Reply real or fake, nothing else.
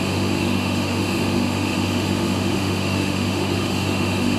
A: fake